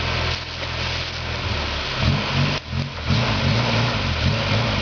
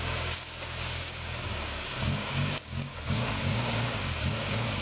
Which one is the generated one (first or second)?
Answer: second